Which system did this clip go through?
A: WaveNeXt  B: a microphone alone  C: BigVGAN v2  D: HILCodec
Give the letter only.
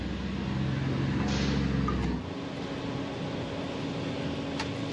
B